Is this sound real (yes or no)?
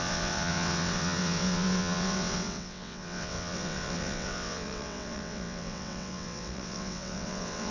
no